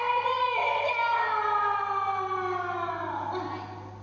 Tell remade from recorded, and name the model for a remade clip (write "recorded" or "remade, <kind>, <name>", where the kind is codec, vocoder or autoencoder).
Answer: recorded